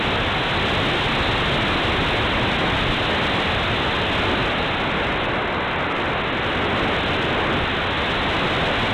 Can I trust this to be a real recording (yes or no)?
yes